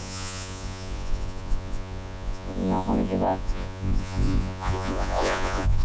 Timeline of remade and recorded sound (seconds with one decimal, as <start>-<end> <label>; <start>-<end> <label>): 0.0-5.8 remade